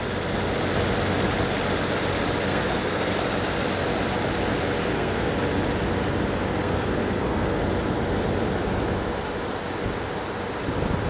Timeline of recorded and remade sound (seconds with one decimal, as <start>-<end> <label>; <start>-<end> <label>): 0.0-2.5 recorded; 2.5-3.1 remade; 3.1-4.8 recorded; 4.8-5.3 remade; 5.3-6.6 recorded; 6.6-7.6 remade; 7.6-11.1 recorded